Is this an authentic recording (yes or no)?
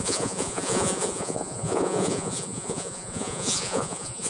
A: no